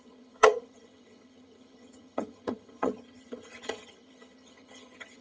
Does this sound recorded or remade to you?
remade